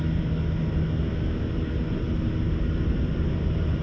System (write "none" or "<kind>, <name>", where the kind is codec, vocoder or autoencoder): none